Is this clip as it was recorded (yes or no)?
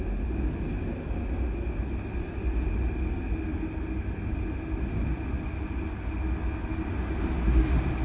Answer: yes